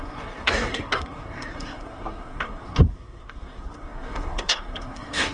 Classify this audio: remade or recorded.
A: remade